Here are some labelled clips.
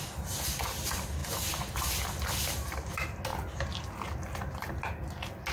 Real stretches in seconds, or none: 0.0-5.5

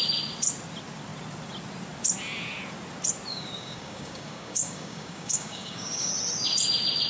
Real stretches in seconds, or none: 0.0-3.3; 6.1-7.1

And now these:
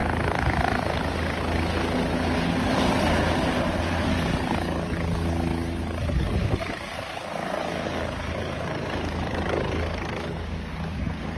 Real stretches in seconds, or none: 0.0-3.9